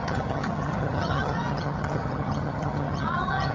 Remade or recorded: remade